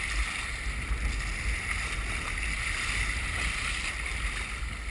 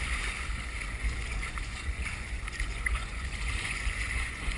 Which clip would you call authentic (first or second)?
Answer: first